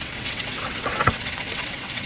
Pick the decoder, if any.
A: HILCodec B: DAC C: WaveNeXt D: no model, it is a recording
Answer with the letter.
C